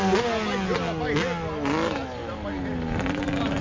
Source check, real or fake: real